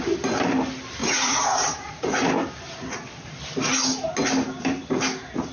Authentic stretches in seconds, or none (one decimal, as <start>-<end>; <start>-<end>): 0.0-1.0; 2.3-5.5